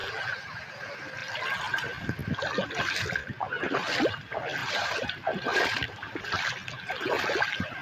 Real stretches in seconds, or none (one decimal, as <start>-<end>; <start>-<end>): 0.0-4.6; 6.2-7.8